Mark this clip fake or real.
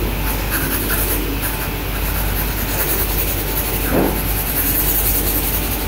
real